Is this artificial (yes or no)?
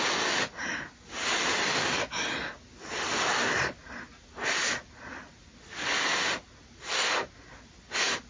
no